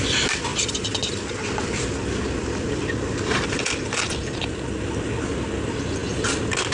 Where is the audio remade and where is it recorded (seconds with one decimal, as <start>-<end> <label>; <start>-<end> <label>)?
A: 0.0-0.5 recorded; 0.5-1.0 remade; 1.0-3.3 recorded; 3.3-4.5 remade; 4.5-6.7 recorded